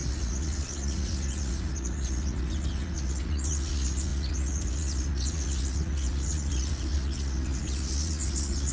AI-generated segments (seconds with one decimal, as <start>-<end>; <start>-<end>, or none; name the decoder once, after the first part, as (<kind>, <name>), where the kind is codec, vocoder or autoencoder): 0.0-8.7 (vocoder, Vocos)